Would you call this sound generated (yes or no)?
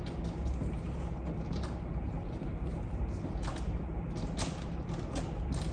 no